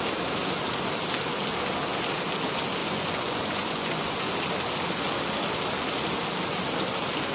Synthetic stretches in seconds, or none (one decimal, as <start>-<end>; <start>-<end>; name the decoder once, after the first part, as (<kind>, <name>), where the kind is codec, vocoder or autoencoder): 2.8-4.3 (vocoder, Vocos)